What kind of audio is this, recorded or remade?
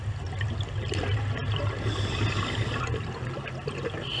recorded